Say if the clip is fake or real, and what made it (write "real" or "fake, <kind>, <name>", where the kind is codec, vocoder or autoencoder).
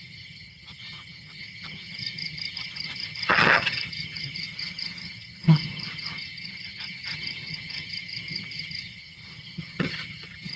fake, vocoder, HiFi-GAN